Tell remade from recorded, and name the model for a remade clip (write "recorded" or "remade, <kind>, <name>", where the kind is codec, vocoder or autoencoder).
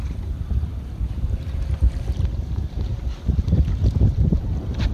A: remade, vocoder, BigVGAN v2